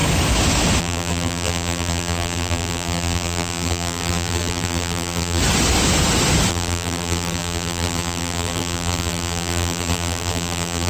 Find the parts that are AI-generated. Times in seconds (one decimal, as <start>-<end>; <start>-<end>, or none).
0.8-5.4; 6.5-10.9